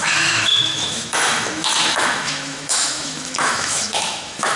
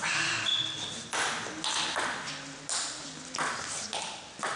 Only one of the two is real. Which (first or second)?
second